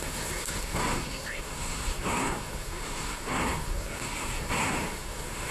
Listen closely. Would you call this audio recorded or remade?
remade